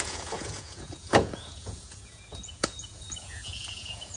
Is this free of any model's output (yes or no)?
no